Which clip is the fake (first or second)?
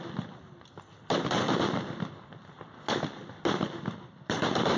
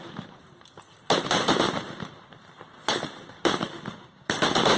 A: second